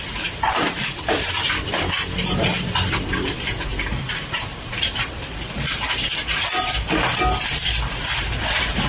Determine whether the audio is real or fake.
real